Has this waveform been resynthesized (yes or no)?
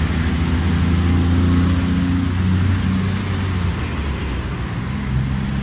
no